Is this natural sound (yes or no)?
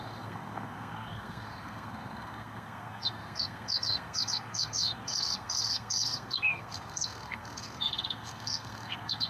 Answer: no